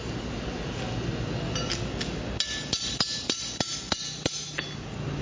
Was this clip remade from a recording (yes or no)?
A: no